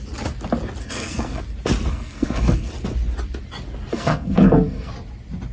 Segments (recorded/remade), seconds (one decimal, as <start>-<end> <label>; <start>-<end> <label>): 0.0-0.8 recorded; 0.8-1.4 remade; 1.4-1.9 recorded; 1.9-2.7 remade; 2.7-3.9 recorded; 3.9-4.9 remade; 4.9-5.5 recorded